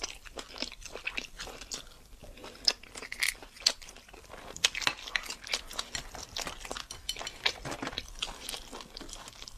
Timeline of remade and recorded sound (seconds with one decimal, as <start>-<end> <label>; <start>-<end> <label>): 0.0-9.6 recorded